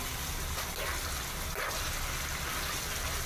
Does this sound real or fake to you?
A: real